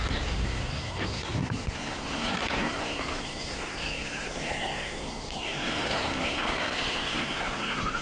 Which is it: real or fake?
fake